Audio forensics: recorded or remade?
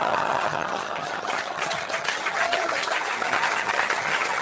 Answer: remade